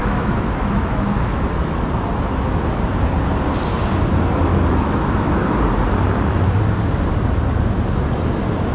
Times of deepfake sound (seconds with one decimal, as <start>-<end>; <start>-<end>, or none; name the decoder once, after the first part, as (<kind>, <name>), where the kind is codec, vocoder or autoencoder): 0.0-1.9 (autoencoder, DAC-VAE); 4.5-5.6